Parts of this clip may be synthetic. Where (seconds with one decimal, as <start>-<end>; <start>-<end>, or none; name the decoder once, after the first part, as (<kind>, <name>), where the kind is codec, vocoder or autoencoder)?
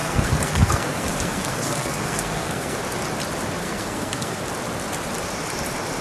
0.0-2.8 (codec, SNAC); 3.6-4.4